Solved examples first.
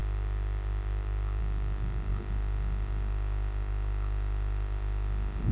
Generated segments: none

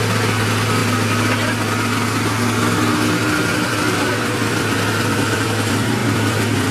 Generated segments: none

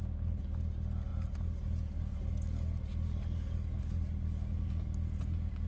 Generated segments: none